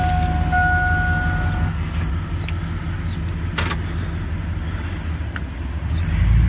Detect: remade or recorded recorded